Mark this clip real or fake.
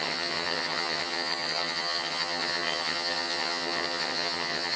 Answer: fake